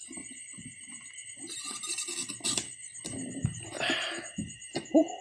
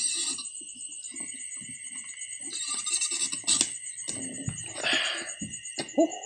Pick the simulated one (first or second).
first